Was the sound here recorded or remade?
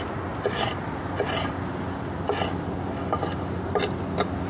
recorded